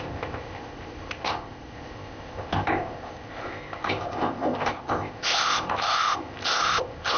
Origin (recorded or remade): remade